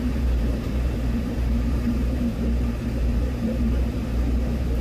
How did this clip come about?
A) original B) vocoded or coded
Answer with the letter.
B